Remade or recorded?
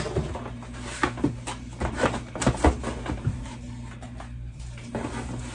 recorded